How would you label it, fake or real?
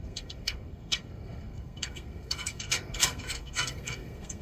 fake